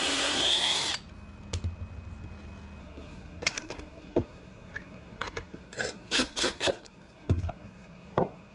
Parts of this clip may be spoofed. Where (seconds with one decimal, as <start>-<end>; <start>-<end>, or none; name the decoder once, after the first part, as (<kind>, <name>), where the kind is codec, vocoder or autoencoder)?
0.0-0.8 (codec, SNAC); 2.8-8.5